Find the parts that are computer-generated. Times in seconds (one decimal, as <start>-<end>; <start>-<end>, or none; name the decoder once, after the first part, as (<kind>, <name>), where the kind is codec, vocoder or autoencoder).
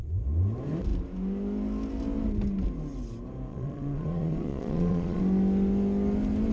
3.5-5.2 (vocoder, Vocos)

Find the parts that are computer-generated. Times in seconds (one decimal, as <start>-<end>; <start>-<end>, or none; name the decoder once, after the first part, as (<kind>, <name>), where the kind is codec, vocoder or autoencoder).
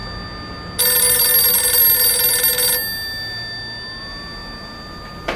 none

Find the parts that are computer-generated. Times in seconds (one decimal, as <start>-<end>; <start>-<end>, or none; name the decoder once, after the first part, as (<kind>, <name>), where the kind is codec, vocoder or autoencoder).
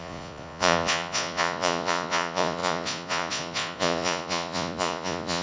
0.0-5.4 (vocoder, Vocos)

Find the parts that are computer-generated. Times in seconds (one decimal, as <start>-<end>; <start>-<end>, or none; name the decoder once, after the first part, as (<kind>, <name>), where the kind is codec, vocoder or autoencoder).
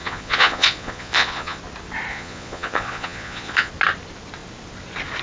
0.0-1.6 (vocoder, Vocos); 2.1-3.7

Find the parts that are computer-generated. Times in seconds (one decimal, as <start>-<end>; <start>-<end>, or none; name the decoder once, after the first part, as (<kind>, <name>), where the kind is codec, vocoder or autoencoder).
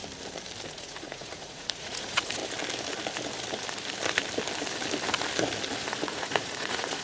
0.7-2.4 (vocoder, Vocos); 5.9-7.0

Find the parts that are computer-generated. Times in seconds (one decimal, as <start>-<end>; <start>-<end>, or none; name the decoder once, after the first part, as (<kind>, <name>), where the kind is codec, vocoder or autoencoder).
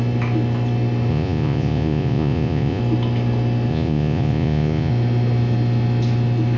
1.1-2.8 (vocoder, Vocos); 3.7-4.9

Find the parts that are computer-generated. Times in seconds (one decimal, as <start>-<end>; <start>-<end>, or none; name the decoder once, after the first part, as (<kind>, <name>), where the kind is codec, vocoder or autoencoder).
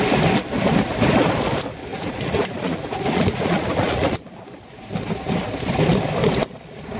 1.9-4.2 (vocoder, Vocos)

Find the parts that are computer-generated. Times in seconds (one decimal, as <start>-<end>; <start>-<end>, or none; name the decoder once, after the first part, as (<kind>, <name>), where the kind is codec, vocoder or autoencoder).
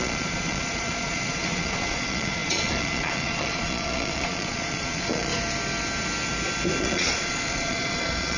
0.0-5.3 (vocoder, Vocos); 6.8-8.4